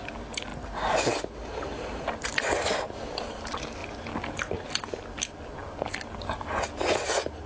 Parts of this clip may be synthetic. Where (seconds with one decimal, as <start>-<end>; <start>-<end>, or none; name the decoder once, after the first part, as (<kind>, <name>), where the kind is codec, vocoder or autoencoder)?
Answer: none